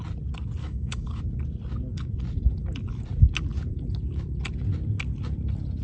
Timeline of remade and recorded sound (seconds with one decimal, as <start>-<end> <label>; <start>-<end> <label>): 0.0-0.6 recorded; 0.6-1.2 remade; 1.2-5.8 recorded